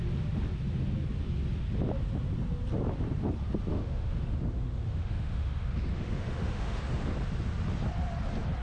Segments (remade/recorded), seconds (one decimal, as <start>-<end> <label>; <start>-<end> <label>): 0.0-3.7 recorded; 3.7-6.8 remade; 6.8-8.6 recorded